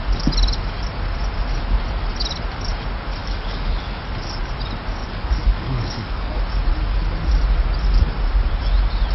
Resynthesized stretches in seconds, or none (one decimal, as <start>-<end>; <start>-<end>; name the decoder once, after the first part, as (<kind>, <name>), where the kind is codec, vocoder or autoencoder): 3.2-4.0 (codec, DAC); 5.0-6.4